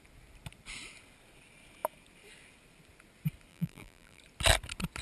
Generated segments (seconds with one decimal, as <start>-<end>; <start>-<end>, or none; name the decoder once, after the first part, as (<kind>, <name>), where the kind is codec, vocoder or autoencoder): 3.5-4.2 (vocoder, BigVGAN v2)